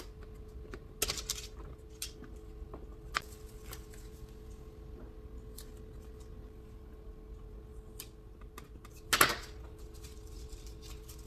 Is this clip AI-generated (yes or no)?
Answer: no